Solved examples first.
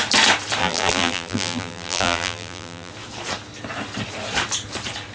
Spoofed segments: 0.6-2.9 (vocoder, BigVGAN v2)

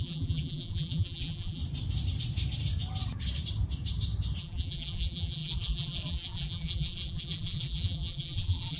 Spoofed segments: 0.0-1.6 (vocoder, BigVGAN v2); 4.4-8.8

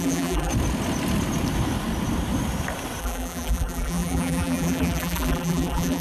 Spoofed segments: 0.0-0.5 (vocoder, BigVGAN v2); 3.0-6.0